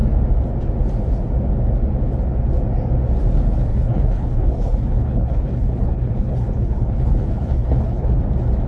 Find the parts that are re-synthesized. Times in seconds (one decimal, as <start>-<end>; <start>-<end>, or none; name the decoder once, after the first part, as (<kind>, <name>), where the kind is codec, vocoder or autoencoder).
3.7-8.2 (codec, HILCodec)